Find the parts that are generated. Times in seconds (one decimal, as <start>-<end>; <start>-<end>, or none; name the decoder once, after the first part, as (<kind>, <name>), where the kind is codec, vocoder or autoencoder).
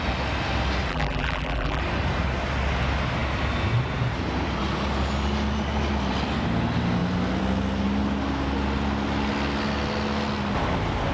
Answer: 0.9-1.8 (vocoder, BigVGAN v2)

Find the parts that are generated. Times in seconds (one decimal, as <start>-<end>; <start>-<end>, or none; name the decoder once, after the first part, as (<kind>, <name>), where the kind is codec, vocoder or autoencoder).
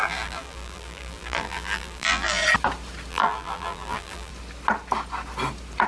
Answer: 0.0-2.4 (vocoder, BigVGAN v2); 3.1-4.3